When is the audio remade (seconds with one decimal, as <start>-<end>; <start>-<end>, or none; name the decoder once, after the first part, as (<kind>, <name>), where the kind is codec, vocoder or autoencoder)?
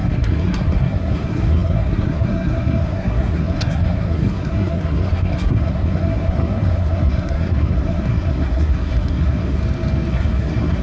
0.0-9.6 (codec, SNAC); 10.1-10.8